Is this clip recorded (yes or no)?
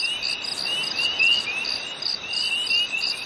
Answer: yes